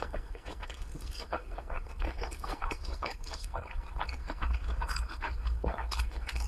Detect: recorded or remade remade